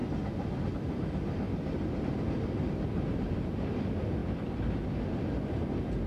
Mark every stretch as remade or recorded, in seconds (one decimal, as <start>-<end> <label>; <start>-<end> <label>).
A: 0.0-0.7 remade; 0.7-4.2 recorded; 4.2-4.9 remade; 4.9-6.1 recorded